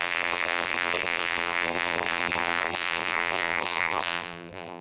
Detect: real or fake fake